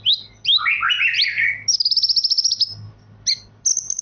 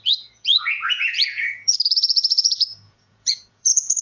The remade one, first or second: second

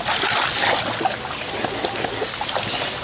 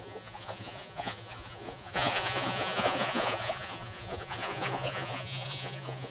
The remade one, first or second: second